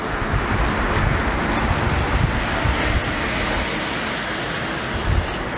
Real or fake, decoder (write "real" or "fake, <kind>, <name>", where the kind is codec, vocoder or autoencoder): real